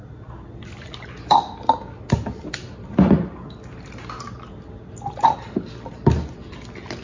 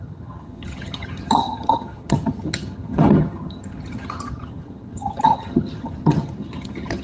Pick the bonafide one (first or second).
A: first